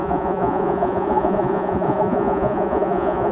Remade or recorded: remade